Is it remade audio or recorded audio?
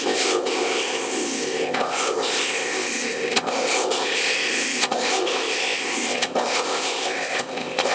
remade